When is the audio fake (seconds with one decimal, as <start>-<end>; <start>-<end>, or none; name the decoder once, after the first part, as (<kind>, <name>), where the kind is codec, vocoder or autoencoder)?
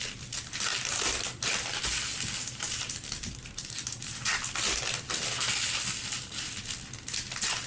0.7-1.4 (vocoder, BigVGAN v2); 2.4-4.4